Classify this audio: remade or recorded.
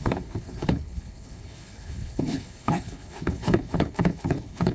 remade